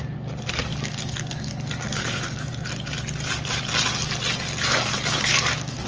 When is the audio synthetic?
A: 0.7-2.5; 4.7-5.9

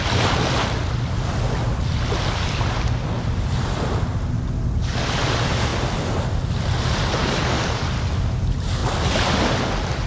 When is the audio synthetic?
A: 7.2-7.8

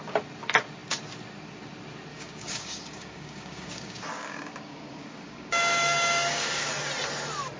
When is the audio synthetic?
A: 2.1-6.7

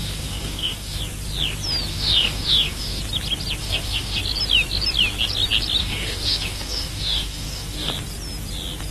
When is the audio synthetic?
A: 0.0-1.0; 1.9-3.0; 3.6-4.2; 5.8-7.9